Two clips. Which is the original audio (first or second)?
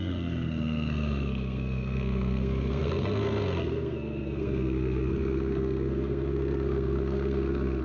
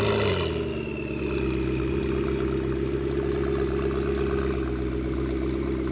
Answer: second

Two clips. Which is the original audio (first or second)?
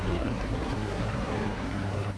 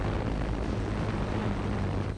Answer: second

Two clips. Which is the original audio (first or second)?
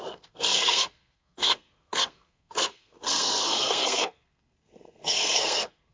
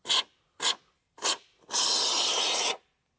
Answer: second